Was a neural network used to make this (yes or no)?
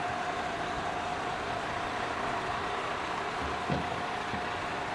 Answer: no